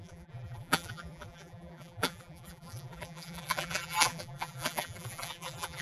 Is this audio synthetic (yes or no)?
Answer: yes